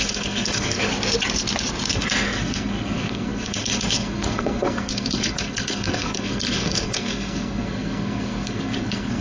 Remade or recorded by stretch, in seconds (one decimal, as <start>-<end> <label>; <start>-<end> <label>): 0.0-0.9 remade; 0.9-1.9 recorded; 1.9-9.2 remade